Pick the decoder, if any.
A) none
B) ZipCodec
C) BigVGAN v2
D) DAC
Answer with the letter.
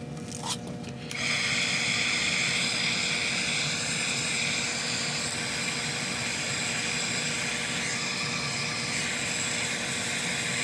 A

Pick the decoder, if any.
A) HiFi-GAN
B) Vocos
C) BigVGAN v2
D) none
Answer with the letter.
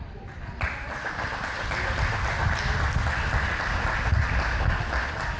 D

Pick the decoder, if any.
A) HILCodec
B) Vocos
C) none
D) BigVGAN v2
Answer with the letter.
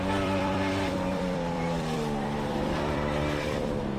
D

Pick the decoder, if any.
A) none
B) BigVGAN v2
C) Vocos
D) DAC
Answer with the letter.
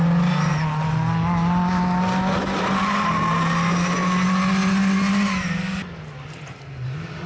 A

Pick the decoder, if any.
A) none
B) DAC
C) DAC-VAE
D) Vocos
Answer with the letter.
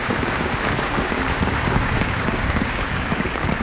B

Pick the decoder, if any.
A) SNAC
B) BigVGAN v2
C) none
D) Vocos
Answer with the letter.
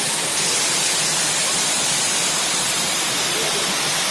C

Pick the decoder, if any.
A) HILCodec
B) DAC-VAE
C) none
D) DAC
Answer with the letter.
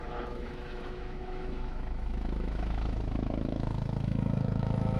B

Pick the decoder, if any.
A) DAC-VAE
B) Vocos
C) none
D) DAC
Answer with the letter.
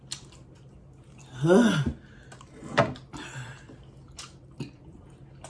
C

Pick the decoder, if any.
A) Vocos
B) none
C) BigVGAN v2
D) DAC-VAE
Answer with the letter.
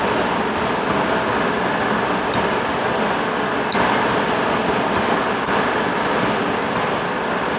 B